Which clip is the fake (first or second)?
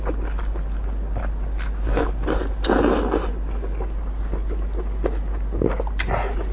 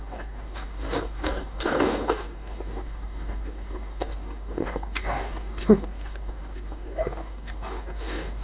second